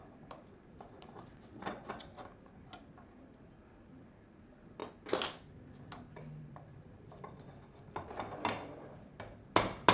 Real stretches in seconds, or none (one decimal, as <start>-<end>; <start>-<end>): 0.0-1.3; 2.1-9.9